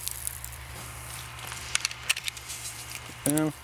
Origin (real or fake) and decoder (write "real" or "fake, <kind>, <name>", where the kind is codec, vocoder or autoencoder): fake, vocoder, BigVGAN v2